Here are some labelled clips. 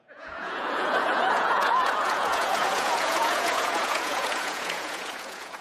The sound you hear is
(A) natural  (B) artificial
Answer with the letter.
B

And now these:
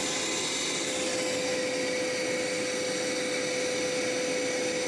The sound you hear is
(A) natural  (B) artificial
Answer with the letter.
A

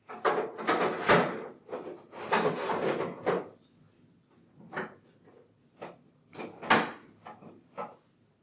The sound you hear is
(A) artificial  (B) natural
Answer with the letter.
B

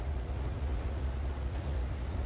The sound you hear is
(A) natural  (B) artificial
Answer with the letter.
B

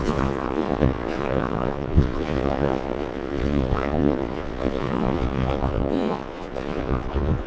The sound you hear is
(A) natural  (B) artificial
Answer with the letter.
B